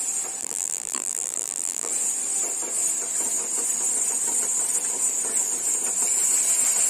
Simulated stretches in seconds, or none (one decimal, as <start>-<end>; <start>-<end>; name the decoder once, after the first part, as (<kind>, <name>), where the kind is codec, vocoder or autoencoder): 0.4-1.9 (vocoder, BigVGAN v2)